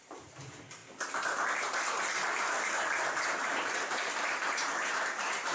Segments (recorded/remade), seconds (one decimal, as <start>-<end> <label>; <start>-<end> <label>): 0.0-0.8 remade; 0.8-3.4 recorded; 3.4-5.5 remade

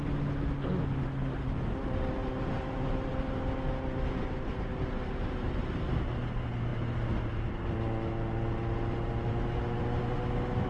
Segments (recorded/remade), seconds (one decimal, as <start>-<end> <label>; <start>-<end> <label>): 0.0-2.2 recorded; 2.2-3.1 remade; 3.1-10.7 recorded

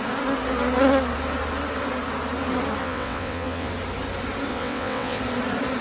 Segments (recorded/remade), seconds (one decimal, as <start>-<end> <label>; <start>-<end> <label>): 0.0-2.8 recorded; 2.8-3.7 remade; 3.7-4.5 recorded; 4.5-5.2 remade; 5.2-5.8 recorded

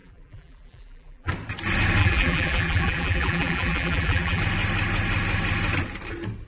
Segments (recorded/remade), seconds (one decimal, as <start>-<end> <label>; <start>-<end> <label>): 0.0-1.3 remade; 1.3-2.0 recorded; 2.0-4.4 remade; 4.4-6.5 recorded

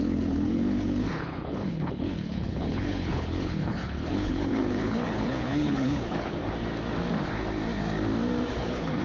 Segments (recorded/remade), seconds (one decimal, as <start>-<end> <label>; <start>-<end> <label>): 0.0-6.4 remade; 6.4-8.5 recorded; 8.5-9.0 remade